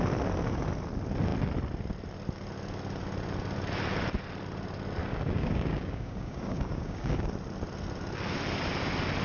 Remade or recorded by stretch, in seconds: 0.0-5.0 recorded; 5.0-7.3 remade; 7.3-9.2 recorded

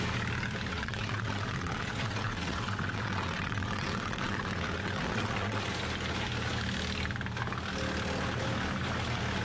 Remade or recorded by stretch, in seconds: 0.0-0.7 recorded; 0.7-5.7 remade; 5.7-9.4 recorded

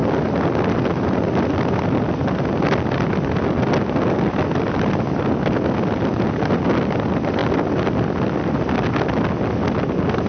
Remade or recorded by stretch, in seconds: 0.0-10.3 recorded

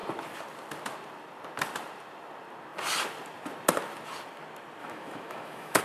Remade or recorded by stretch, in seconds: 0.0-4.8 recorded; 4.8-5.8 remade

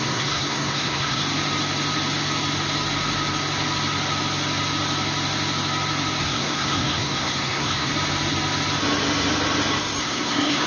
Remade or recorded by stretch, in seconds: 0.0-1.2 remade; 1.2-6.2 recorded; 6.2-7.9 remade; 7.9-10.0 recorded; 10.0-10.7 remade

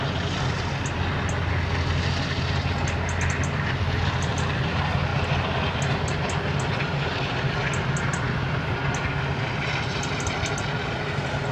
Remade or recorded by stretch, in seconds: 0.0-11.5 recorded

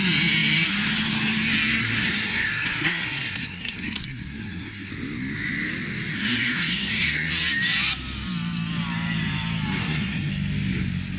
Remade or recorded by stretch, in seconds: 0.0-1.8 recorded; 1.8-4.9 remade; 4.9-6.1 recorded; 6.1-7.3 remade; 7.3-9.8 recorded; 9.8-10.3 remade; 10.3-11.2 recorded

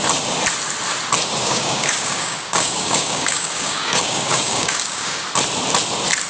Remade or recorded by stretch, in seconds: 0.0-1.4 recorded; 1.4-5.2 remade; 5.2-6.3 recorded